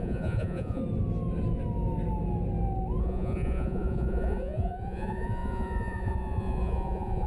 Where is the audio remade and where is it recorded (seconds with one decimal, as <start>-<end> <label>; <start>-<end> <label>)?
0.0-0.8 remade; 0.8-3.0 recorded; 3.0-7.3 remade